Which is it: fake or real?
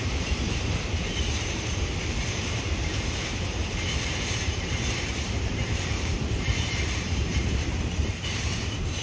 fake